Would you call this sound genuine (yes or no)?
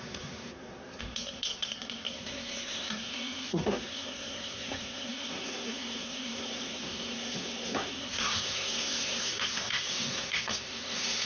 no